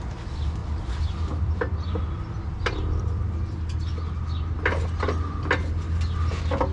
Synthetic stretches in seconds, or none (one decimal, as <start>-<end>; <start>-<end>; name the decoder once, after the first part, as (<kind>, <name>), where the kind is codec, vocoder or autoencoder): 0.6-3.0 (vocoder, BigVGAN v2)